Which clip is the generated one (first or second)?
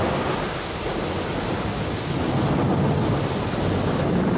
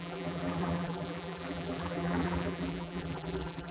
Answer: second